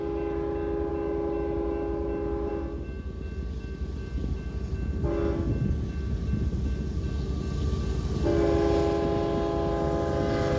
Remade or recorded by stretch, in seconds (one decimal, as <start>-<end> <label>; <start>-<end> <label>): 0.0-10.6 recorded